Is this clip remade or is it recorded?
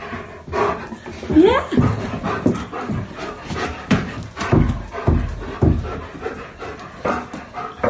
recorded